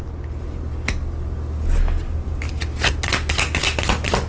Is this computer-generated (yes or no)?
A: no